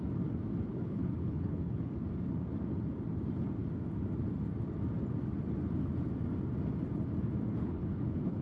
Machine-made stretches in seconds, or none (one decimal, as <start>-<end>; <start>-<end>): 0.7-1.9; 7.5-8.4